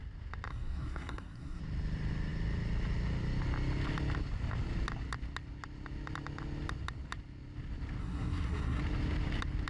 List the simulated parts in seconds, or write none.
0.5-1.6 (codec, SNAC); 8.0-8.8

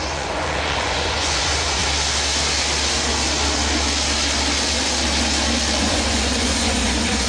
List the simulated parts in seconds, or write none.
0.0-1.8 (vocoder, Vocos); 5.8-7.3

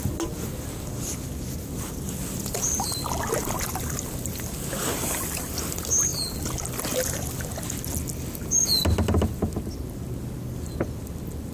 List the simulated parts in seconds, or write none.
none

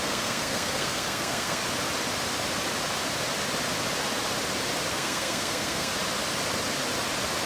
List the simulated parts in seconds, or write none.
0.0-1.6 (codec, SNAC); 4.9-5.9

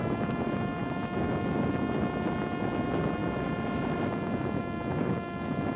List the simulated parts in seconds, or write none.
none

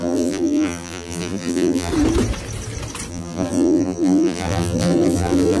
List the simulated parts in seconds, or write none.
0.0-1.9 (vocoder, BigVGAN v2); 3.1-5.6

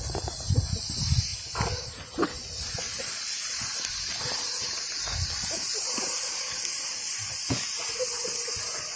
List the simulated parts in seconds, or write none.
none

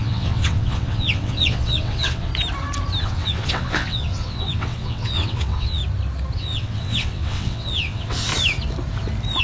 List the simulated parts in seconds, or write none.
0.0-2.3 (vocoder, WaveNeXt); 3.0-5.8; 6.4-8.3